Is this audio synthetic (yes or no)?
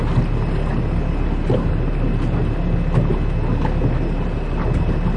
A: no